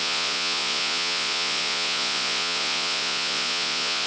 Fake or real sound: fake